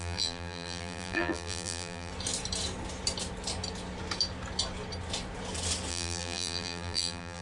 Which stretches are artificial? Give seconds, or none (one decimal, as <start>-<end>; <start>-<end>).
0.0-2.1; 5.9-7.4